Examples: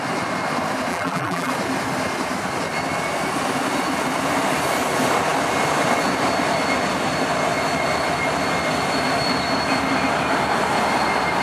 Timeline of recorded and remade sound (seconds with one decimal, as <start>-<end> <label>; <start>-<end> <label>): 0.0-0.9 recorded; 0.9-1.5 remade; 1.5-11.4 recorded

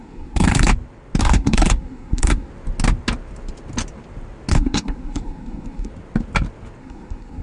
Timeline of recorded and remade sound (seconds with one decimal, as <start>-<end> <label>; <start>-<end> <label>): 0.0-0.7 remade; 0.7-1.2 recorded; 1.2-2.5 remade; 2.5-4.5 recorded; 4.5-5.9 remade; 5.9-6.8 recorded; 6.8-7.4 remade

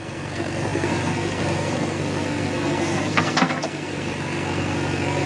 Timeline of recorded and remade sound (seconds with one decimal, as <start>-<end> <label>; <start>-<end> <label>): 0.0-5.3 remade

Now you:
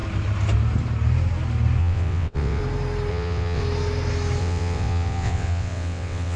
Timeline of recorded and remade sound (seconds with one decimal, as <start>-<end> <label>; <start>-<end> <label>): 0.0-1.8 recorded; 1.8-2.6 remade; 2.6-3.1 recorded; 3.1-3.6 remade; 3.6-4.4 recorded; 4.4-6.4 remade

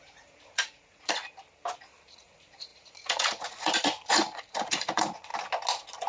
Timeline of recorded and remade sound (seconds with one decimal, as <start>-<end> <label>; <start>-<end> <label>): 0.0-1.2 remade; 1.2-2.1 recorded; 2.1-5.3 remade; 5.3-6.1 recorded

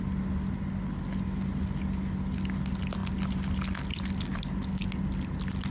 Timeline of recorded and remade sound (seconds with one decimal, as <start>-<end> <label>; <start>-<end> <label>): 0.0-5.7 recorded